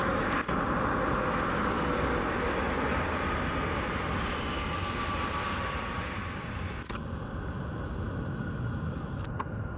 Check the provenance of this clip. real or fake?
real